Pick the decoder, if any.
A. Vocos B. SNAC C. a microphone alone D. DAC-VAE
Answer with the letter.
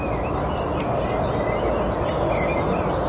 C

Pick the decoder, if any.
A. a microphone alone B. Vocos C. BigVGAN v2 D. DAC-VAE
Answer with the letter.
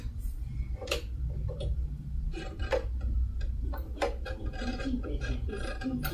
C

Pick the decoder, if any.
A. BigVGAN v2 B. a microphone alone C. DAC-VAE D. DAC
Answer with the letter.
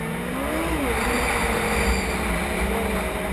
B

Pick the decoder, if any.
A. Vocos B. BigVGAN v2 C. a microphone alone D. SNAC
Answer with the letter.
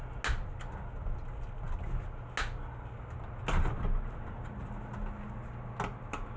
C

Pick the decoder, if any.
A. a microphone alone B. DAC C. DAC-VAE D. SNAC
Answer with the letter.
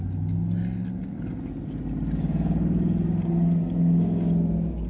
A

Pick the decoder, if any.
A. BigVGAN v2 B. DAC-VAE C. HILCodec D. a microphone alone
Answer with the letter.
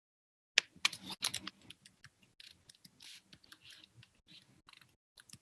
D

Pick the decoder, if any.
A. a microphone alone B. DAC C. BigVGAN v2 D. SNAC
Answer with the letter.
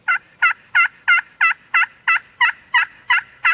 A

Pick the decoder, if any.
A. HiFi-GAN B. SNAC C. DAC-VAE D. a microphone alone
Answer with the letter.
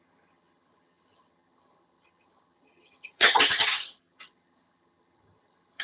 A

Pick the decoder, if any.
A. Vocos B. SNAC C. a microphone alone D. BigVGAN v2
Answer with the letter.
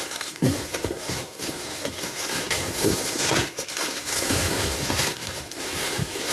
B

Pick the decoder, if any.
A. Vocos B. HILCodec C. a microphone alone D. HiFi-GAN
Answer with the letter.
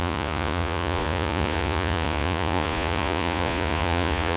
A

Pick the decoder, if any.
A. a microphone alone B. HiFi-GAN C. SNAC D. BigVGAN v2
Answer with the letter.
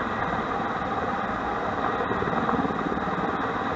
A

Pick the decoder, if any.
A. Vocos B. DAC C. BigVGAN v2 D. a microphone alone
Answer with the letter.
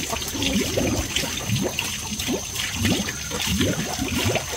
D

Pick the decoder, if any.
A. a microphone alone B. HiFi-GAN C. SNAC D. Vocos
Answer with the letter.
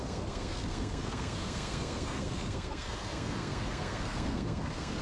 C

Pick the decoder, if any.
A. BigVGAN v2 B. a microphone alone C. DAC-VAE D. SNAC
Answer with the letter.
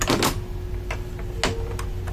B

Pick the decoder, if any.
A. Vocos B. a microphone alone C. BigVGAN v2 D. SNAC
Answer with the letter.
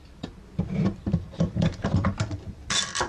C